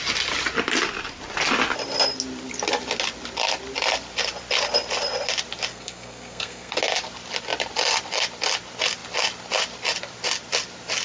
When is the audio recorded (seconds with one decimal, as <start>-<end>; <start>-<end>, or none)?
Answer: 0.0-5.7; 6.8-11.0